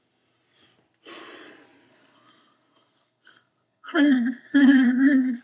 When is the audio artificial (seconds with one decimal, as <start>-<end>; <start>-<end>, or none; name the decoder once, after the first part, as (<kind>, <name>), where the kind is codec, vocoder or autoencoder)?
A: 1.9-5.4 (codec, SNAC)